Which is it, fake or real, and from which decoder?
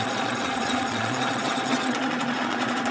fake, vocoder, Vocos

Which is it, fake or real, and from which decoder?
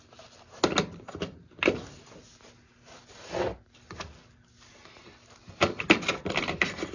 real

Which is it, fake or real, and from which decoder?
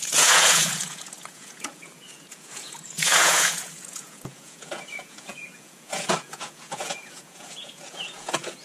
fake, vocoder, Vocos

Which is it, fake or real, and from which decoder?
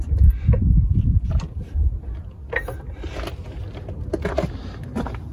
real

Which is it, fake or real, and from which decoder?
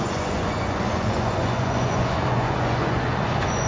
fake, vocoder, Vocos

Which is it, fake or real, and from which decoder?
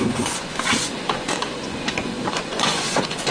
fake, vocoder, Vocos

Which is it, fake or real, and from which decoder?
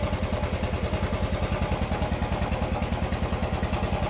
real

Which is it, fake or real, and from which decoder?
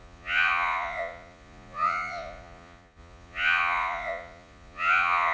fake, vocoder, Vocos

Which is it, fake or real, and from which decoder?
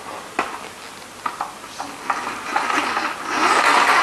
real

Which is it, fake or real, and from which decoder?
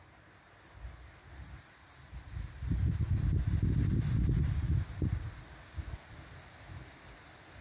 real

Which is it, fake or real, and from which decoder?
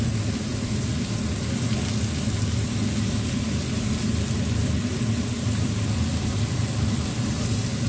real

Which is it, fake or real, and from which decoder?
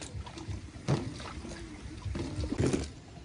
real